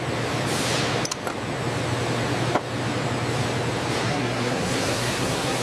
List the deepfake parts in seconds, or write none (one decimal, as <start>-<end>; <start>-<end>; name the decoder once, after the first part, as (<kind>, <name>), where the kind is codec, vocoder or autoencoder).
4.0-5.6 (codec, SNAC)